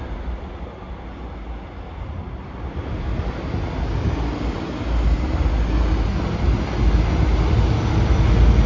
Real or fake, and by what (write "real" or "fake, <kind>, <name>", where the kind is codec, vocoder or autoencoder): real